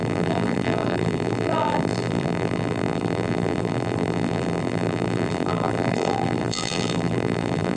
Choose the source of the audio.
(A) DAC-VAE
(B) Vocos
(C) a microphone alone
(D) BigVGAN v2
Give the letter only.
D